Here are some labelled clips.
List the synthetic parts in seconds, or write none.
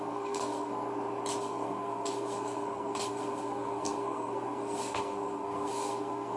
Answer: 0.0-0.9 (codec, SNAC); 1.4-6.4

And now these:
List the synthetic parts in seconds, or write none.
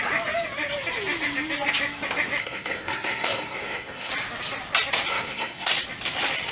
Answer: 2.4-4.1 (codec, SNAC); 5.1-5.7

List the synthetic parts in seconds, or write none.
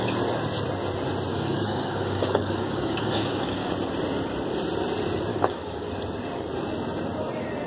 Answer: 1.3-3.7 (codec, DAC); 5.3-5.9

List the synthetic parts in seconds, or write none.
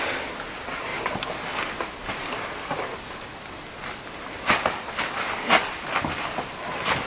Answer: none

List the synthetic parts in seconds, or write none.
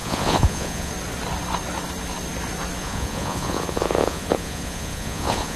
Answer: 0.0-0.9 (vocoder, Vocos); 2.8-5.6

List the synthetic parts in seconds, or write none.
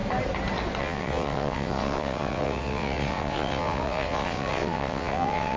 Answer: 0.8-5.6 (vocoder, WaveNeXt)